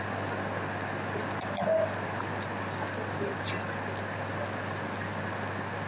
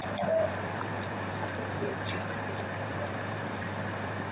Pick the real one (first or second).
first